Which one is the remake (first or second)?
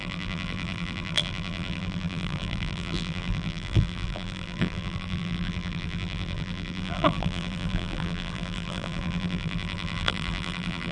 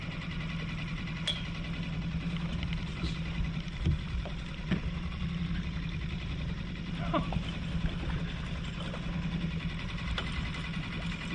first